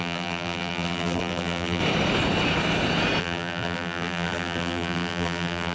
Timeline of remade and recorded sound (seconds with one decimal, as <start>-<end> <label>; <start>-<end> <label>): 0.0-1.8 remade; 1.8-3.2 recorded; 3.2-5.7 remade